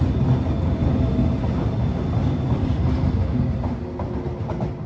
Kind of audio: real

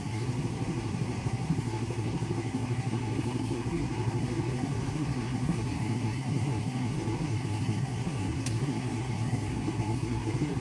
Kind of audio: fake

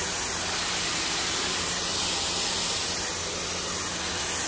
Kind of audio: real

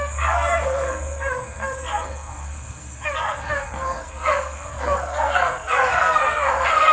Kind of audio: fake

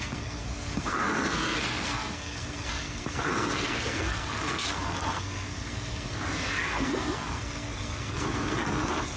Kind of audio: fake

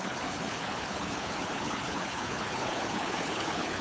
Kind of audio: fake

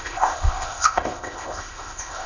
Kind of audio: fake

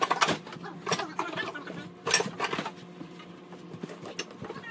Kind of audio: real